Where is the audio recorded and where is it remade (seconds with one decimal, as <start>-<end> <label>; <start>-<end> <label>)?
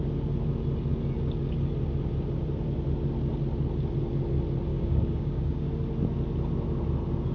0.0-4.7 recorded; 4.7-5.7 remade; 5.7-7.3 recorded